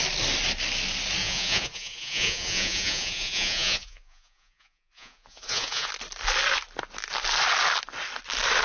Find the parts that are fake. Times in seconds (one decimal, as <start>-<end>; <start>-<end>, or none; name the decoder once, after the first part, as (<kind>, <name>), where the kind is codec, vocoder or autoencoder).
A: 1.2-5.9 (vocoder, Vocos)